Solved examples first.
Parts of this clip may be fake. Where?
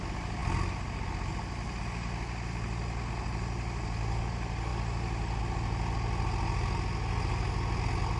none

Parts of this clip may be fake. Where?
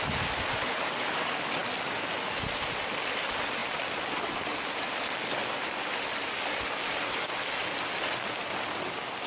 none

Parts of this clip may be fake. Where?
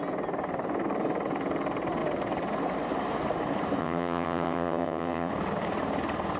3.8-5.3 (vocoder, HiFi-GAN)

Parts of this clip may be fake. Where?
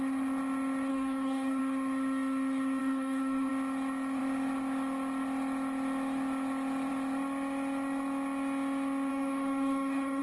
0.9-1.6 (codec, DAC); 2.8-3.5; 9.1-10.2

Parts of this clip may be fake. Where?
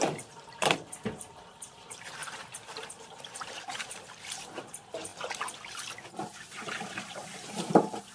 0.0-5.1 (vocoder, BigVGAN v2); 6.8-8.1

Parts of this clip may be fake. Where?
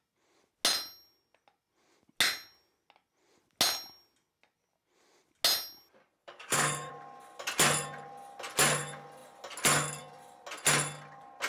6.2-6.9 (codec, DAC)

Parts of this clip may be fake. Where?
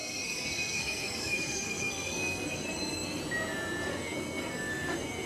0.0-3.2 (codec, SNAC); 3.9-5.3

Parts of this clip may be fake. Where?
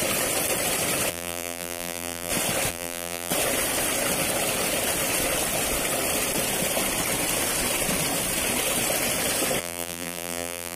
1.1-2.3 (vocoder, BigVGAN v2); 2.7-3.3; 9.6-10.8